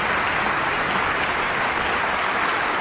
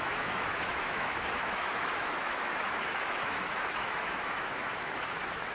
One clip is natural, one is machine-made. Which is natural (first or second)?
first